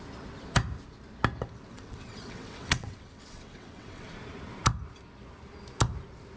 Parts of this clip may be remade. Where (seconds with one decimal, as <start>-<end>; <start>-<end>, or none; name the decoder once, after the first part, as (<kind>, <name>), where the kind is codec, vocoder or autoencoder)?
1.7-4.1 (vocoder, WaveNeXt)